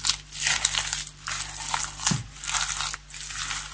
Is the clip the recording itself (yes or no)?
yes